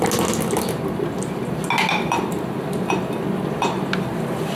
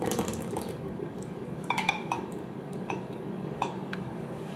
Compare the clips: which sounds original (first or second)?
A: first